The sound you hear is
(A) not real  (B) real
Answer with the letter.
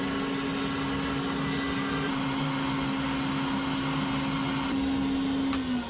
B